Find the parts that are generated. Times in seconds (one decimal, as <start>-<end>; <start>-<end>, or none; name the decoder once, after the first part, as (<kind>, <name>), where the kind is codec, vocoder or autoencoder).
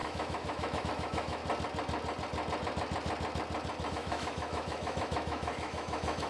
0.0-1.4 (autoencoder, DAC-VAE); 3.9-6.3